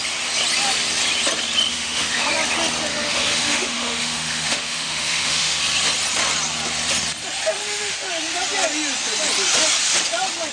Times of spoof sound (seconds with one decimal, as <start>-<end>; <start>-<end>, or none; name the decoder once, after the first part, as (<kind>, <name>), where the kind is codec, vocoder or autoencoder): 1.7-2.3 (autoencoder, DAC-VAE); 2.9-5.6; 7.6-8.1